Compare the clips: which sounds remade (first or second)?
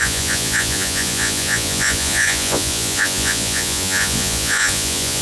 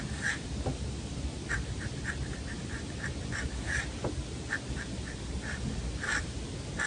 first